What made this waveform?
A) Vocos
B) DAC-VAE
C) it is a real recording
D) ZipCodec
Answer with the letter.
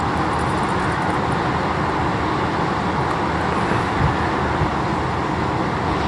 C